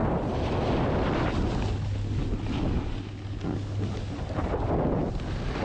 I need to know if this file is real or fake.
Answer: real